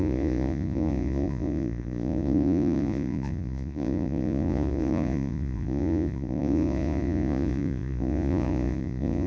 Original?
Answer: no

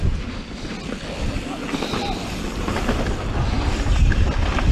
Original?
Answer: yes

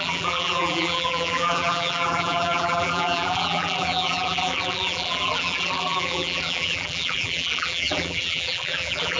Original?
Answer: no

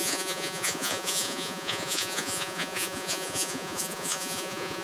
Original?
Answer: no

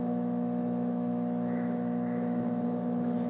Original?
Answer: no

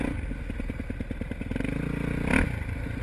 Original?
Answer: yes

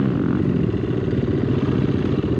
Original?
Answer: yes